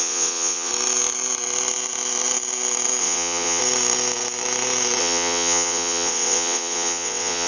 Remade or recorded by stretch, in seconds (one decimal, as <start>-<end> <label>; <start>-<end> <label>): 0.0-0.7 remade; 0.7-3.0 recorded; 3.0-3.6 remade; 3.6-5.0 recorded; 5.0-7.5 remade

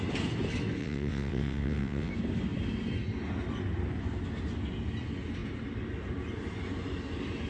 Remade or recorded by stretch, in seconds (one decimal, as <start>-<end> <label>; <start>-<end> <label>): 0.0-0.8 recorded; 0.8-2.1 remade; 2.1-7.5 recorded

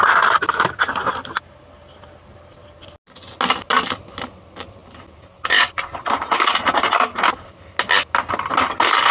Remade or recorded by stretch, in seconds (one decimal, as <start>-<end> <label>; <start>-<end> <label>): 0.0-9.1 recorded

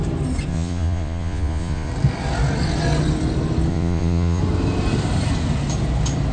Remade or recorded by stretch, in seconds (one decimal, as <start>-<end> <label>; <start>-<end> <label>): 0.0-0.5 recorded; 0.5-1.9 remade; 1.9-3.7 recorded; 3.7-4.4 remade; 4.4-6.3 recorded

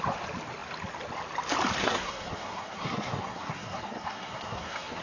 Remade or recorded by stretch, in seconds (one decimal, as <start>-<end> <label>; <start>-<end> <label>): 0.0-1.8 recorded; 1.8-5.0 remade